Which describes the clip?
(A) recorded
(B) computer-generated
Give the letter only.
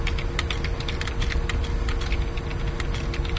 A